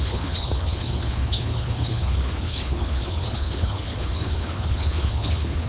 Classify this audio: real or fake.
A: fake